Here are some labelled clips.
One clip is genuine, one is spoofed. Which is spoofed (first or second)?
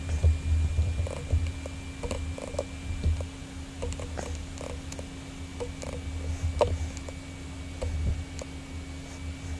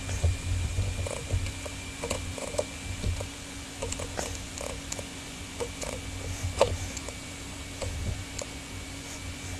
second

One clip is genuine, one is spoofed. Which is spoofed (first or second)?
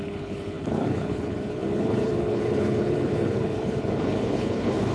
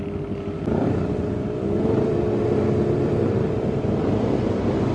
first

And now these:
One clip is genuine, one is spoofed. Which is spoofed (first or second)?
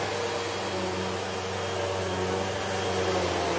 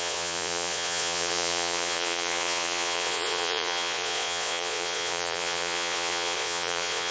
second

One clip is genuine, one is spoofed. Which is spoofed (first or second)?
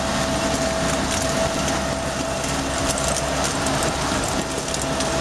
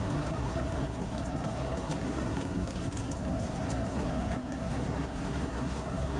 second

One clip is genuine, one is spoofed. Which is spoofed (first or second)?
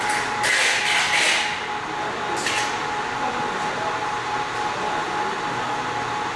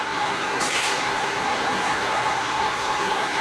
second